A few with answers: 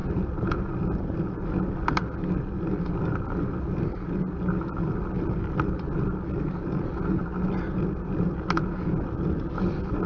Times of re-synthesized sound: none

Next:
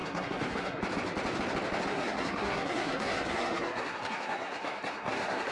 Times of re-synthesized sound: 0.0-0.8 (codec, SNAC); 1.9-5.5

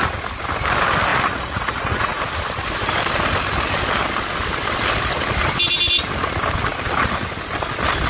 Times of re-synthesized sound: 1.1-2.2 (vocoder, Vocos)

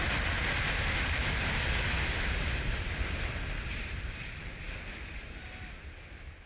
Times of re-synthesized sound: 3.6-4.4 (vocoder, BigVGAN v2)

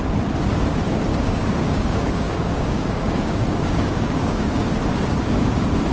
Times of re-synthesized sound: 1.1-4.6 (codec, DAC)

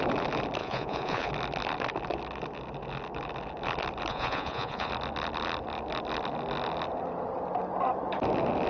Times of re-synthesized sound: 0.6-1.3 (vocoder, Vocos); 4.1-4.9

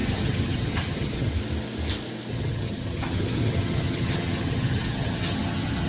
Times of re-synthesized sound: 0.0-1.3 (vocoder, HiFi-GAN); 2.3-5.9